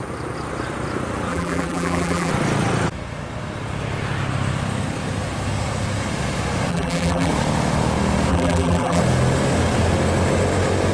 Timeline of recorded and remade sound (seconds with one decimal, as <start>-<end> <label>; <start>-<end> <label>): 0.0-1.3 recorded; 1.3-2.3 remade; 2.3-6.7 recorded; 6.7-7.3 remade; 7.3-8.3 recorded; 8.3-9.0 remade; 9.0-10.9 recorded